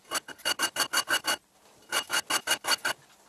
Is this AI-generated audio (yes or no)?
no